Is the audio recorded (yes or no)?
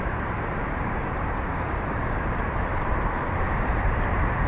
no